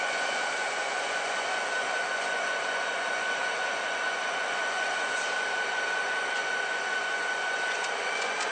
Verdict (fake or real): fake